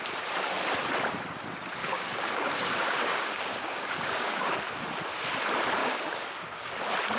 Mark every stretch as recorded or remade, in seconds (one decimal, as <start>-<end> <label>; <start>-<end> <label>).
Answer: 0.0-1.8 recorded; 1.8-4.6 remade; 4.6-5.8 recorded; 5.8-6.7 remade; 6.7-7.2 recorded